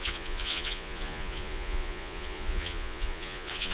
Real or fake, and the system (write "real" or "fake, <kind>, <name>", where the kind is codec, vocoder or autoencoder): fake, vocoder, Vocos